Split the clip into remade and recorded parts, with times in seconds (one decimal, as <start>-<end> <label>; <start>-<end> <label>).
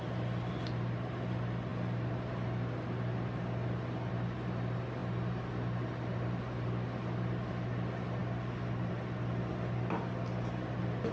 0.0-11.1 recorded